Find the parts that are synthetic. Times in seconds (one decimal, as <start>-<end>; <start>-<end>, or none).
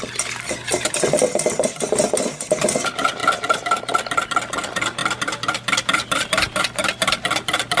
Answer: 0.0-3.2; 4.3-5.0